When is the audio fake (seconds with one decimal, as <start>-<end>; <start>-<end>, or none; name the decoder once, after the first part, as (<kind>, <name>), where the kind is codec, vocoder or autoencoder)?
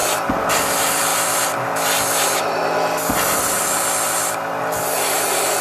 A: none